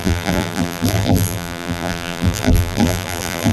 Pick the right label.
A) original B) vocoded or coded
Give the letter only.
B